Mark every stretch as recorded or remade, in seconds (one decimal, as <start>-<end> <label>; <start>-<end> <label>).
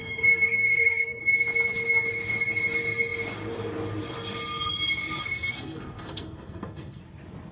0.0-1.2 remade; 1.2-5.2 recorded; 5.2-7.0 remade; 7.0-7.5 recorded